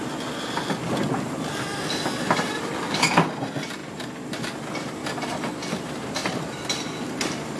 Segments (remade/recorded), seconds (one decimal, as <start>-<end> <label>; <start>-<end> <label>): 0.0-2.3 recorded; 2.3-3.8 remade; 3.8-4.4 recorded; 4.4-5.0 remade; 5.0-5.5 recorded; 5.5-7.6 remade